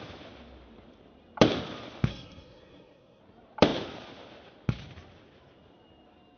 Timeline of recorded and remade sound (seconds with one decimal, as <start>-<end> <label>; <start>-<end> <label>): 0.0-2.1 recorded; 2.1-3.2 remade; 3.2-6.4 recorded